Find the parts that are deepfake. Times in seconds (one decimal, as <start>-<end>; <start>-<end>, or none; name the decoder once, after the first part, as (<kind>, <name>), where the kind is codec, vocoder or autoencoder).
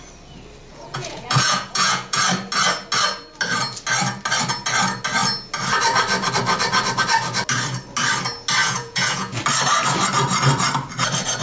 0.7-2.2 (vocoder, Vocos); 8.6-9.4